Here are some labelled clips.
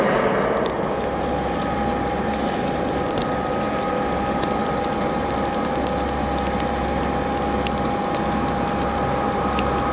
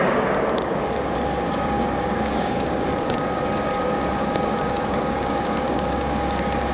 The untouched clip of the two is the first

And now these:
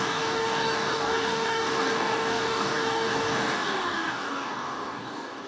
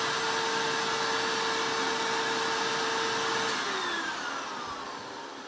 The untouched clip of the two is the second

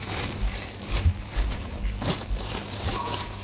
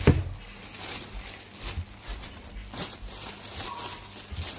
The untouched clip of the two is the second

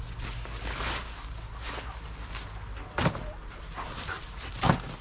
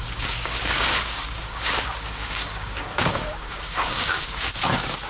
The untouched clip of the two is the first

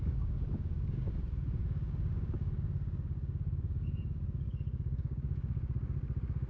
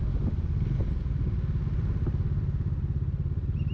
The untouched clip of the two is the second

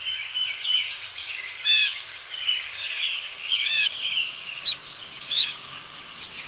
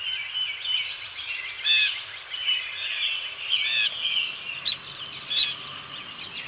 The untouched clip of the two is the second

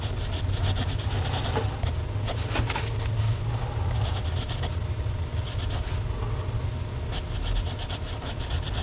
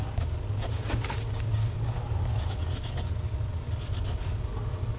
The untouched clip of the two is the first